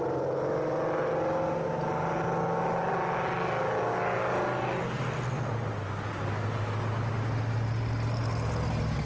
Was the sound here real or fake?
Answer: real